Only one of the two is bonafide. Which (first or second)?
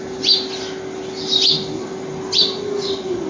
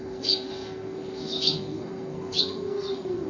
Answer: first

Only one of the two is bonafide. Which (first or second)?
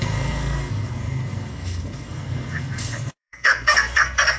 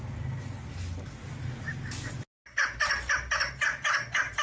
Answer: second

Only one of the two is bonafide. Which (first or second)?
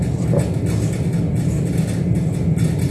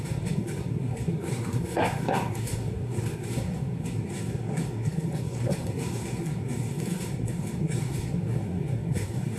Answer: first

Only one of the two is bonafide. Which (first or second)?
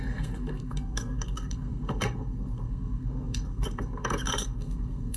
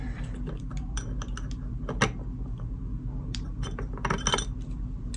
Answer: second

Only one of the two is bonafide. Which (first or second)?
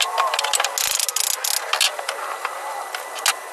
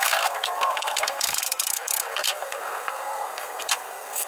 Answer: first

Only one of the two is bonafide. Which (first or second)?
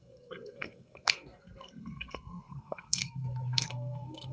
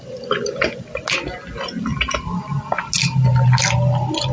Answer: second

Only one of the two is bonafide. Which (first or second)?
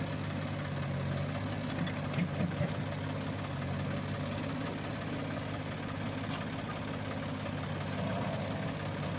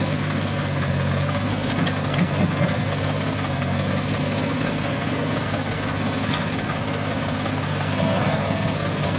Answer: first